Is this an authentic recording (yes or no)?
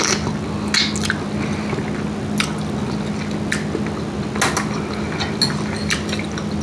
yes